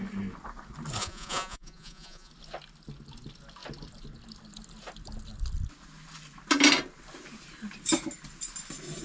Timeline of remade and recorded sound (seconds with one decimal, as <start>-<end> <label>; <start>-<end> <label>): 0.0-1.0 recorded; 1.0-2.3 remade; 2.3-9.0 recorded

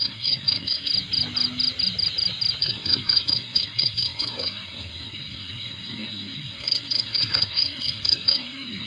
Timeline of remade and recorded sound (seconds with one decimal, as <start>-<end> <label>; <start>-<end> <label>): 0.0-0.9 remade; 0.9-2.6 recorded; 2.6-8.9 remade

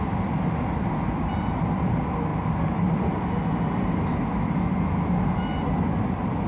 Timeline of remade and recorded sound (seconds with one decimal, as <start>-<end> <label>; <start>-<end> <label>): 0.0-6.5 recorded

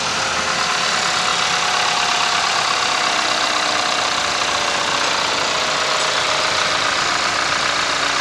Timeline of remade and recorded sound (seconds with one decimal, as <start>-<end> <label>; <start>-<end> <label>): 0.0-8.2 recorded

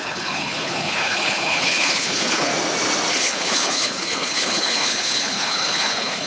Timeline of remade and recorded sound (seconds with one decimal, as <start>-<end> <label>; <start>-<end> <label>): 0.0-2.5 remade; 2.5-3.1 recorded; 3.1-6.3 remade

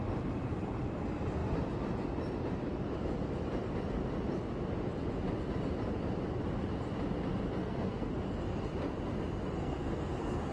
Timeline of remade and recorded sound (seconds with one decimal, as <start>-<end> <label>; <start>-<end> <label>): 0.0-7.6 recorded; 7.6-8.1 remade; 8.1-9.6 recorded; 9.6-10.5 remade